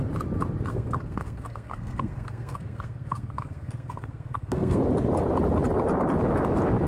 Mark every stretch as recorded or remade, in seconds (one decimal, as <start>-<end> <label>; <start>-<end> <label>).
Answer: 0.0-0.7 recorded; 0.7-4.8 remade; 4.8-6.9 recorded